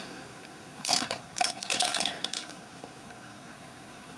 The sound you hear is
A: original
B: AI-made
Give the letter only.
B